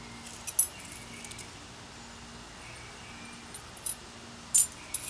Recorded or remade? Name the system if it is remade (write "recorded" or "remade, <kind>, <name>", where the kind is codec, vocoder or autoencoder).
recorded